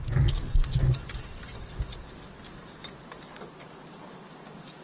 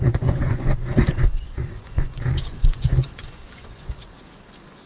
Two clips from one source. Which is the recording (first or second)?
first